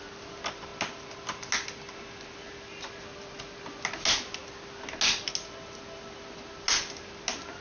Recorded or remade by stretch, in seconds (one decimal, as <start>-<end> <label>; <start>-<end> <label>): 0.0-7.6 recorded